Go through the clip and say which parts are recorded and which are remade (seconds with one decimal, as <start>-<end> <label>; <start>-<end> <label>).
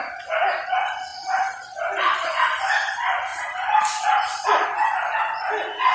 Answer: 0.0-1.1 recorded; 1.1-2.6 remade; 2.6-3.3 recorded; 3.3-4.5 remade; 4.5-5.9 recorded